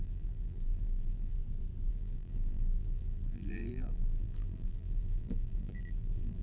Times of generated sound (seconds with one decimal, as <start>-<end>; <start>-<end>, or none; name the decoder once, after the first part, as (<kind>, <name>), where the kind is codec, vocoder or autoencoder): 0.0-1.4 (vocoder, BigVGAN v2); 1.9-6.4